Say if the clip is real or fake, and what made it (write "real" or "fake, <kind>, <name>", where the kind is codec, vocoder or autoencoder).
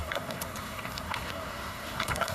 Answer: fake, codec, SNAC